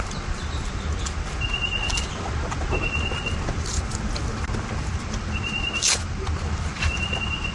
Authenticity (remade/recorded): recorded